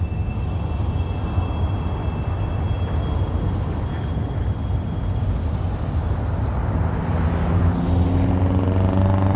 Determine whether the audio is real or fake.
real